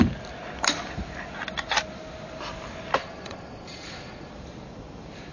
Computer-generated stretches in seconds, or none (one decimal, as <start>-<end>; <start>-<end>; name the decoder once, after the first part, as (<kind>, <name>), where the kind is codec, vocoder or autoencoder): 3.0-4.3 (vocoder, Vocos)